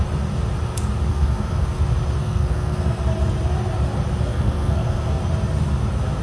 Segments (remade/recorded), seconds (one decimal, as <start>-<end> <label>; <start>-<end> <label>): 0.0-1.1 recorded; 1.1-1.8 remade; 1.8-2.2 recorded; 2.2-3.0 remade; 3.0-4.3 recorded; 4.3-5.2 remade; 5.2-6.2 recorded